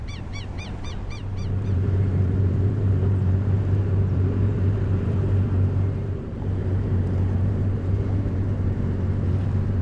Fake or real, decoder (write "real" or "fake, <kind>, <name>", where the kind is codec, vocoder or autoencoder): fake, vocoder, BigVGAN v2